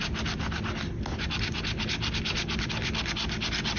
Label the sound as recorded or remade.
recorded